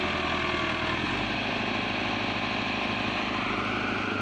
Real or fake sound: real